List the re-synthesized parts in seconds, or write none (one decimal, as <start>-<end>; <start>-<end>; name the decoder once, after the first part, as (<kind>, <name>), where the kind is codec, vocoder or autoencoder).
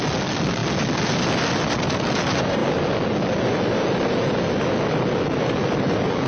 none